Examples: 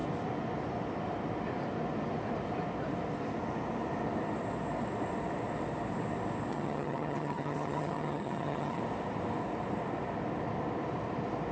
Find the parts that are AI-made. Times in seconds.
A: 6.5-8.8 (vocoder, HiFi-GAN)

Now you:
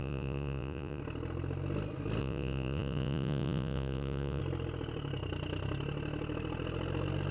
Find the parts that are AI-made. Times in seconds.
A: 0.0-1.0 (vocoder, Vocos); 2.2-4.4

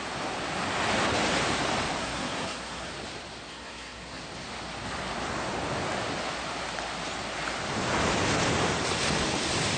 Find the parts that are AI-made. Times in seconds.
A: 2.0-2.9 (codec, SNAC); 3.5-4.2

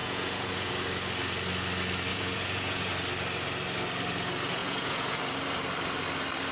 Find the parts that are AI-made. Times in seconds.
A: 0.0-0.7 (vocoder, Vocos); 2.1-2.9; 4.6-5.2

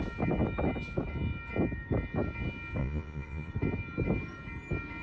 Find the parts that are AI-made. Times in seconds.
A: 2.8-3.5 (vocoder, Vocos)

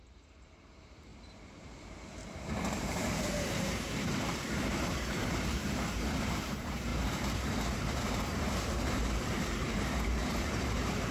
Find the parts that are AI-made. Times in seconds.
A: 0.0-11.1 (vocoder, BigVGAN v2)

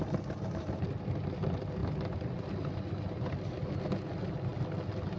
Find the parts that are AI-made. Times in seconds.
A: none